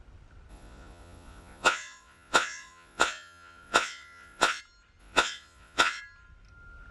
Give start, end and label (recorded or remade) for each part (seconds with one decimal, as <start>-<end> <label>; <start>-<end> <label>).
0.0-0.5 recorded; 0.5-4.6 remade; 4.6-5.0 recorded; 5.0-6.0 remade; 6.0-6.9 recorded